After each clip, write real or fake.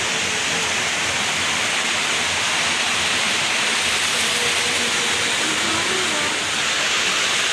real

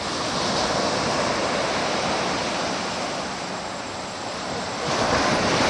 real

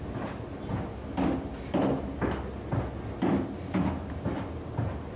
real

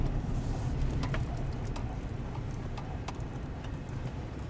real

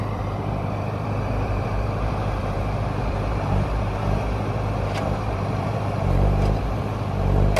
fake